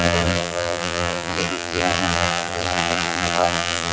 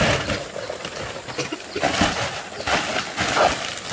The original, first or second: second